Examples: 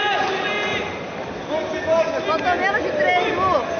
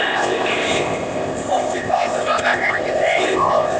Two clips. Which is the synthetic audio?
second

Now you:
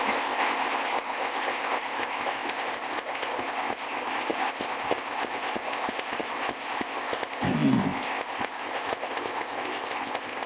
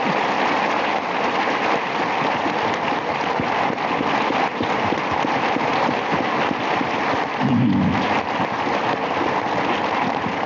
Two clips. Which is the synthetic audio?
first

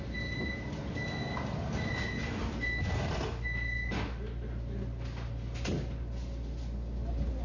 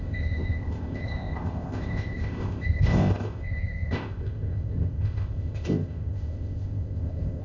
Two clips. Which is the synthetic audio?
second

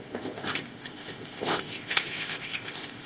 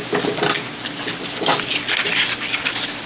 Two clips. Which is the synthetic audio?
first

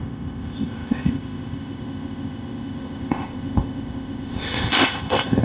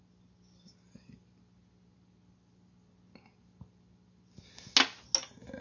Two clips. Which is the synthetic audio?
first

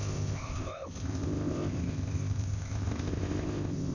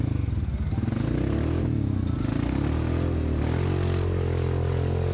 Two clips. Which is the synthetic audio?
first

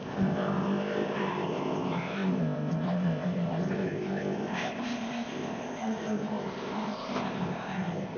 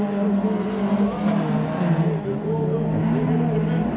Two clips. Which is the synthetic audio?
first